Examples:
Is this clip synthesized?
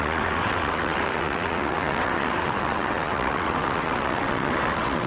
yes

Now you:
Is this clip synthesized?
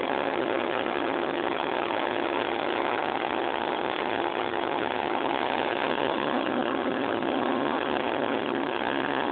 yes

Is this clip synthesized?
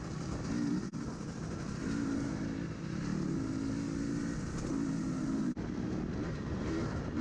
no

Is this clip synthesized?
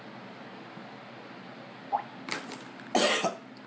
no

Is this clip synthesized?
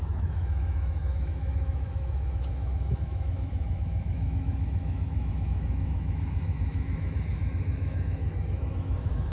yes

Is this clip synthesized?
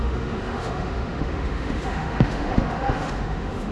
yes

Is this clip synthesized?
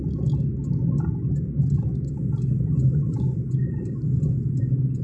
no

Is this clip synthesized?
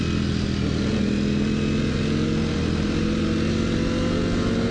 no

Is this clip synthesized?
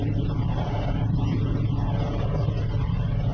no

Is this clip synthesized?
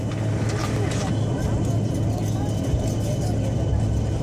no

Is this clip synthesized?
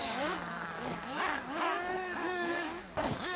yes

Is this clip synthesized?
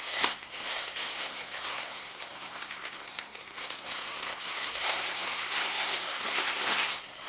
yes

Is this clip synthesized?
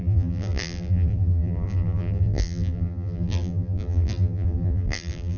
yes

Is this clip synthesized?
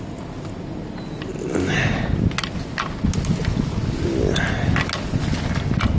no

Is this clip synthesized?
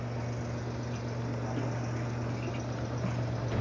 no